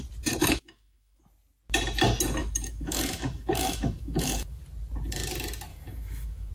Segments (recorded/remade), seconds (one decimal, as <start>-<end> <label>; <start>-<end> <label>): 0.0-0.4 recorded; 0.4-1.2 remade; 1.2-2.4 recorded; 2.4-4.6 remade; 4.6-5.7 recorded; 5.7-6.5 remade